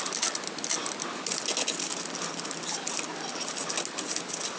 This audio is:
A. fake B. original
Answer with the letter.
B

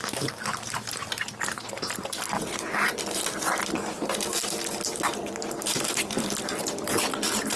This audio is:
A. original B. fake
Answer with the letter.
A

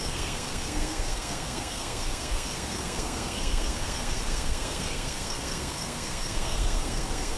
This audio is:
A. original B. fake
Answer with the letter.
B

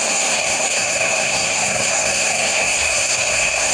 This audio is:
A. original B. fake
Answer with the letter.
B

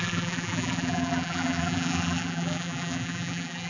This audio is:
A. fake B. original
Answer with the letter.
A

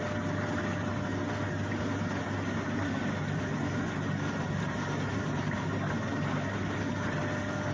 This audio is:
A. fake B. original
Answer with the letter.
B